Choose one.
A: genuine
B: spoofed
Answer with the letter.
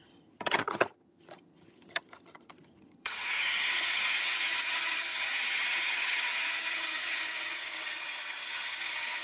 B